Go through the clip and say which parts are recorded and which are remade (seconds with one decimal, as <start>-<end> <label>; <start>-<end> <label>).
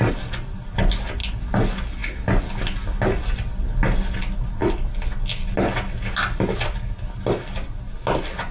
0.0-8.5 recorded